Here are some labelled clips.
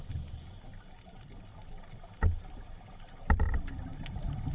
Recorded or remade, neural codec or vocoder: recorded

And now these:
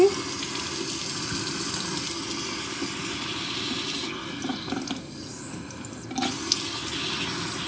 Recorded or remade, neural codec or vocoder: recorded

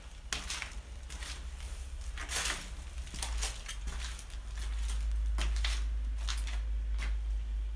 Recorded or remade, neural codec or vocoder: recorded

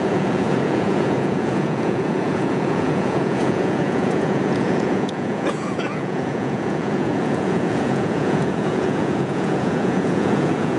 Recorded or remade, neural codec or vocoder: remade, vocoder, Vocos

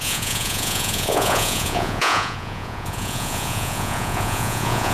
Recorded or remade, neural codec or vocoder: remade, vocoder, Vocos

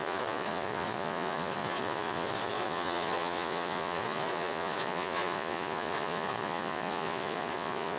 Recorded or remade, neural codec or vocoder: remade, vocoder, Vocos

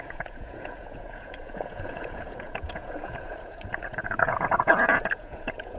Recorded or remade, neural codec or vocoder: remade, vocoder, Vocos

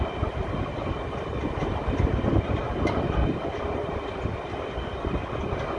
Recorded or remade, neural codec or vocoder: recorded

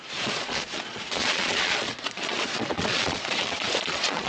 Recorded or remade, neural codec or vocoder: remade, vocoder, Vocos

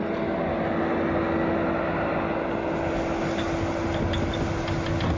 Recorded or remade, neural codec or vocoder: recorded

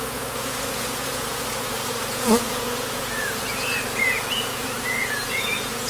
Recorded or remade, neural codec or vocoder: remade, vocoder, Vocos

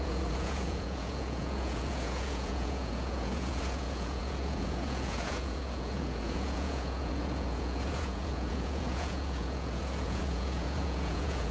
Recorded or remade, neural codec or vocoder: remade, vocoder, Vocos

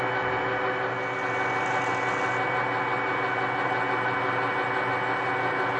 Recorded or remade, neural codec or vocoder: recorded